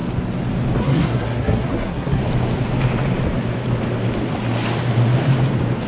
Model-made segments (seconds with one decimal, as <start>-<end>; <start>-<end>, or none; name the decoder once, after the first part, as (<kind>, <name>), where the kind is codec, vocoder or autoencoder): 0.8-2.2 (codec, SNAC)